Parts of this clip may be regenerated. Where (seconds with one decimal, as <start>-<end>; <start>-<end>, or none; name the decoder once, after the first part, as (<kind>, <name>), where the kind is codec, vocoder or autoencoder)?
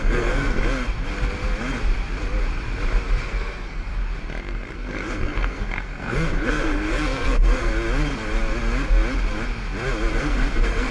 0.0-0.6 (codec, SNAC); 3.2-3.9; 4.4-7.7; 10.1-10.9